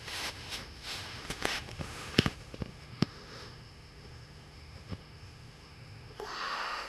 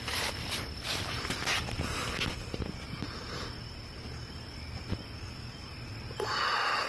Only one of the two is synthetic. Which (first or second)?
first